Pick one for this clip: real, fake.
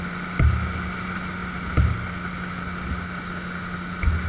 real